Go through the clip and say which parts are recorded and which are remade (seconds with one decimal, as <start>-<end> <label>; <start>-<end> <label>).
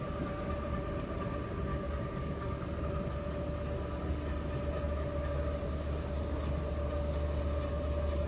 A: 0.0-1.7 recorded; 1.7-2.8 remade; 2.8-8.3 recorded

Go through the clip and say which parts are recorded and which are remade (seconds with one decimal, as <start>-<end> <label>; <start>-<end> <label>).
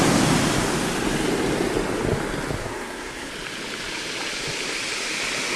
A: 0.0-2.6 recorded; 2.6-3.3 remade; 3.3-5.6 recorded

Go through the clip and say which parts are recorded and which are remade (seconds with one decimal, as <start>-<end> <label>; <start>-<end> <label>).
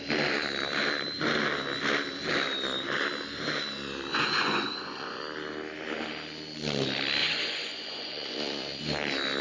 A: 0.0-4.1 recorded; 4.1-5.2 remade; 5.2-7.2 recorded; 7.2-8.8 remade; 8.8-9.4 recorded